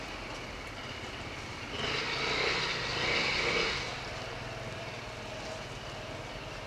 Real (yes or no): yes